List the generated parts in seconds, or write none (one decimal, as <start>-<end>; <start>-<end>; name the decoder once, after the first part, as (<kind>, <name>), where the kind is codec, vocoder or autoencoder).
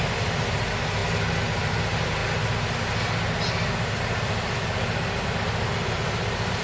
none